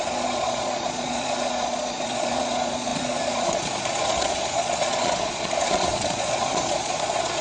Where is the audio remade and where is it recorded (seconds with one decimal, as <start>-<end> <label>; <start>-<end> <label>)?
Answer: 0.0-7.4 remade